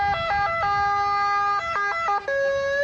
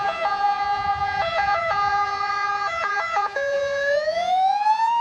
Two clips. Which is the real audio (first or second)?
first